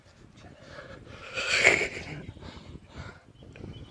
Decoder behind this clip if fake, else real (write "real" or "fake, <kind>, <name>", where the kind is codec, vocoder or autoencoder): real